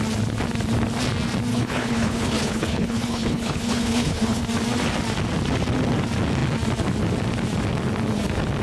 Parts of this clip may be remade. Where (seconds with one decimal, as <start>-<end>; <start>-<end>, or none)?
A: 1.5-4.4